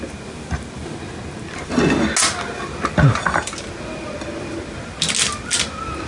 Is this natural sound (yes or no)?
yes